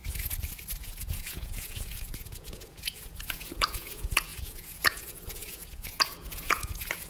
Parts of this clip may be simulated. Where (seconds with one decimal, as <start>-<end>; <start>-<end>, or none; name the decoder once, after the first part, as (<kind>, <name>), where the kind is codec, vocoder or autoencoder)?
0.8-7.1 (vocoder, Vocos)